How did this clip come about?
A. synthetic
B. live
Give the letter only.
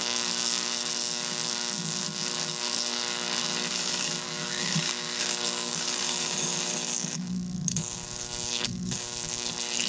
A